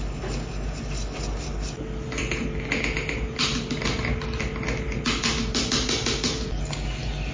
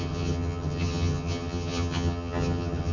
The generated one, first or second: second